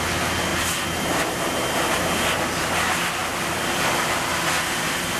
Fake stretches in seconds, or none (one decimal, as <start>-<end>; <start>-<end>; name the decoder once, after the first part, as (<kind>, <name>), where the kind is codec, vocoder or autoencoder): none